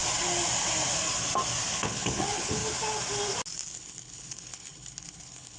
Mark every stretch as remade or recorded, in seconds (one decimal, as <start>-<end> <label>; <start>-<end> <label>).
0.0-1.7 recorded; 1.7-2.6 remade; 2.6-3.7 recorded; 3.7-5.6 remade